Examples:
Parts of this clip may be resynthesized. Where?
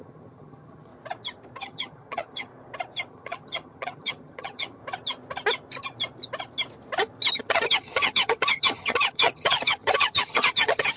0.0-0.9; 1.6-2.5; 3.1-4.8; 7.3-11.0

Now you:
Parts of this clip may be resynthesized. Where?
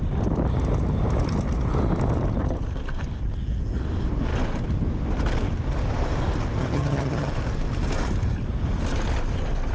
6.6-7.3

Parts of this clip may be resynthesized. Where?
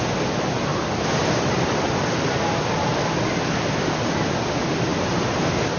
none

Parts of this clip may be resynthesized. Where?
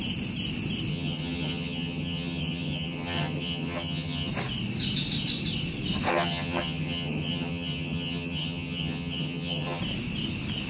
0.9-4.3; 6.1-9.8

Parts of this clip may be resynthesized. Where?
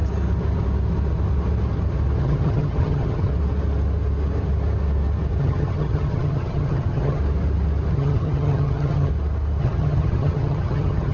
2.2-3.3; 5.4-7.2; 7.9-9.1; 9.6-11.1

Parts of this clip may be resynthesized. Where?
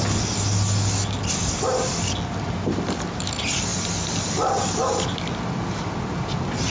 none